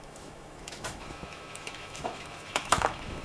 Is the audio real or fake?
fake